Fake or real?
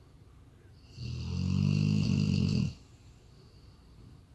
real